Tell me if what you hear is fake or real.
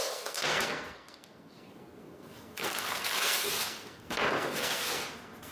fake